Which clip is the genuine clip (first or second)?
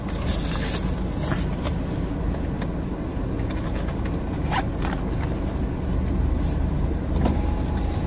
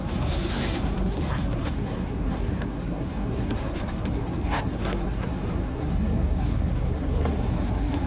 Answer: first